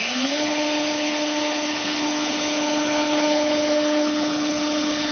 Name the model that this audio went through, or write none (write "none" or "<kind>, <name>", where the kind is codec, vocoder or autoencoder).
codec, HILCodec